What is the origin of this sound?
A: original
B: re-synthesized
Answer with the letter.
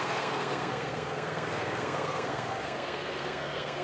B